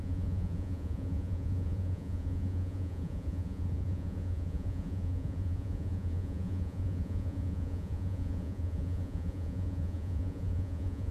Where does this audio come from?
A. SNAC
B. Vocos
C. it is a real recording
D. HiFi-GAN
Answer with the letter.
B